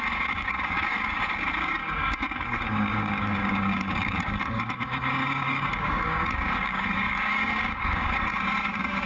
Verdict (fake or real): fake